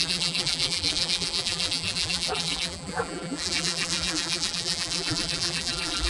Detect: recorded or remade remade